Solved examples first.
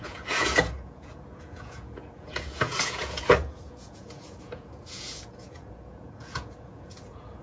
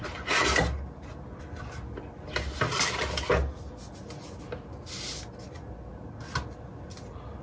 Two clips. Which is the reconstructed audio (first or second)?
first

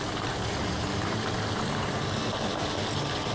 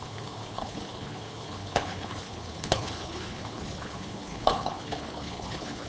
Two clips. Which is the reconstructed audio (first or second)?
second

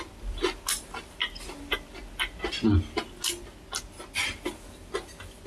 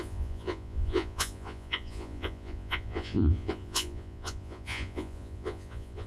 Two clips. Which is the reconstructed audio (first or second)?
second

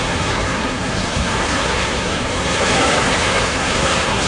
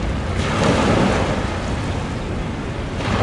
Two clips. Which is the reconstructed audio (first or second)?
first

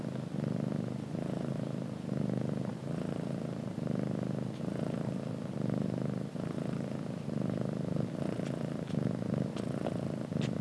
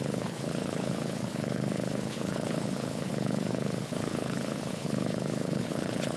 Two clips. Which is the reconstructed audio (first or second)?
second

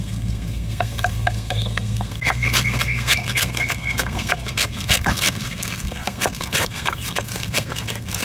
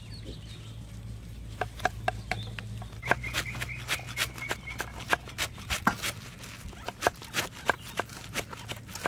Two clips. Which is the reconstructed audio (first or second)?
first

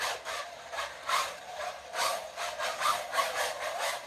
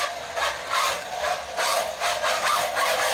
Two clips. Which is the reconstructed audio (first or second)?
first